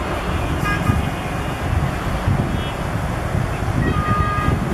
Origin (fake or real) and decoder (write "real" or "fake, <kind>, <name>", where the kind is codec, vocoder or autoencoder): real